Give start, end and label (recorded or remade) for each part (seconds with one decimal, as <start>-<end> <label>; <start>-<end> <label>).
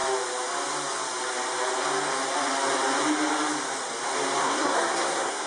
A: 0.0-4.4 recorded; 4.4-5.5 remade